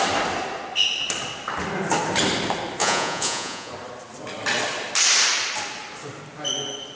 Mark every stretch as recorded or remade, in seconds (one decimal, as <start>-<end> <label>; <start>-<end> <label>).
0.0-2.8 recorded; 2.8-3.7 remade; 3.7-6.9 recorded